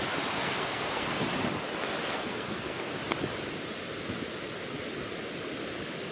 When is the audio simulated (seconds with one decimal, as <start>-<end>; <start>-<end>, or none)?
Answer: 0.4-1.2; 2.0-3.0